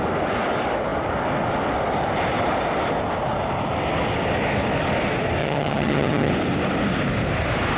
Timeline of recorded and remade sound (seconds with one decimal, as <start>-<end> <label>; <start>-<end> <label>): 0.0-5.4 recorded; 5.4-6.3 remade; 6.3-7.8 recorded

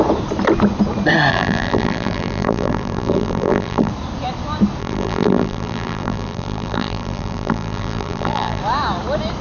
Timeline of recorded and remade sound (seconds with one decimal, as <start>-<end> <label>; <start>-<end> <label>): 0.0-1.3 recorded; 1.3-3.9 remade; 3.9-4.8 recorded; 4.8-8.6 remade; 8.6-9.4 recorded

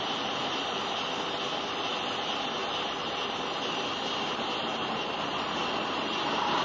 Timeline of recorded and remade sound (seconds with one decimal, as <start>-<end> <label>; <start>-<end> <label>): 0.0-6.6 recorded

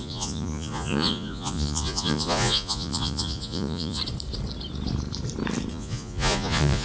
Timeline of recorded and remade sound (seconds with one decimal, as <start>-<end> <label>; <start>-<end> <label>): 0.0-4.0 remade; 4.0-5.7 recorded; 5.7-6.8 remade